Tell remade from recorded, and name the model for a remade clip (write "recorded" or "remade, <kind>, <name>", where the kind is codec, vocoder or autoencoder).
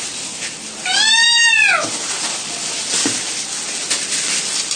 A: remade, vocoder, BigVGAN v2